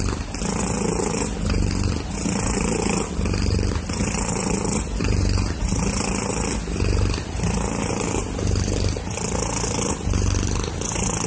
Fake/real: real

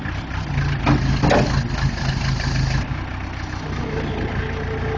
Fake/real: real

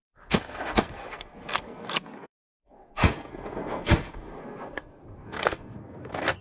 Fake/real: fake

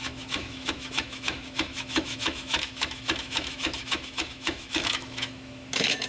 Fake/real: fake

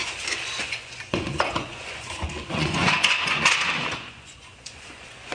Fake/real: fake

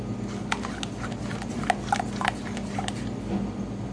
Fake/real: real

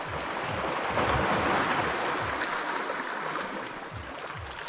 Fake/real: real